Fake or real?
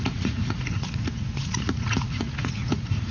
fake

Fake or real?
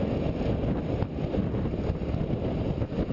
real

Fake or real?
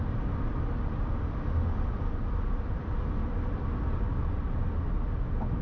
real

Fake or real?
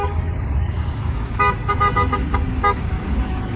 fake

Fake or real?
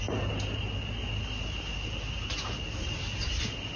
real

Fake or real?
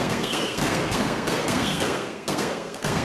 fake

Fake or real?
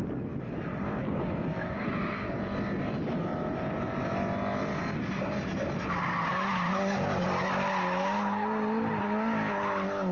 real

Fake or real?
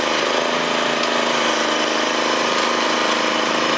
real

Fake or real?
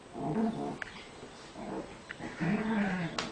real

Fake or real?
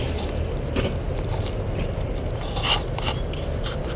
real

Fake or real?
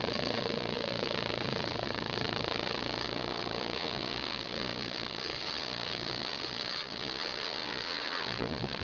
fake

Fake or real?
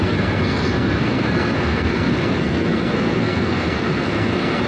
fake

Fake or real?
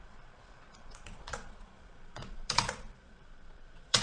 fake